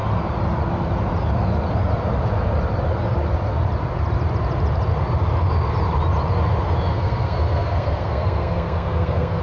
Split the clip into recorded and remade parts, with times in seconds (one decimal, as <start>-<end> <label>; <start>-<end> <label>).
0.0-6.9 recorded; 6.9-9.4 remade